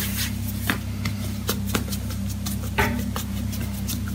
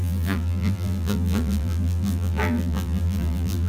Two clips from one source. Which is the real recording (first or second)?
first